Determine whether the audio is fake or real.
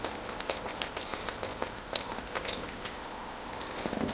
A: fake